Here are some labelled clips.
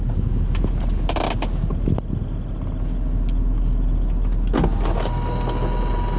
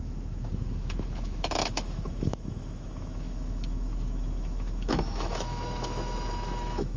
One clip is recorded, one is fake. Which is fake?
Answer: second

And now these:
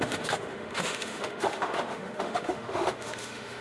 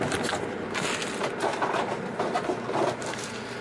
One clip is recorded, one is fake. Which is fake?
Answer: first